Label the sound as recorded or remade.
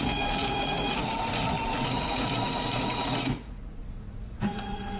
remade